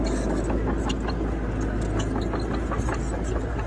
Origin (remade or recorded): recorded